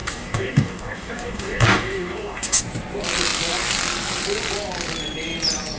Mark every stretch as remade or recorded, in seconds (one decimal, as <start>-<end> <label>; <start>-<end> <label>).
0.0-2.6 remade; 2.6-5.8 recorded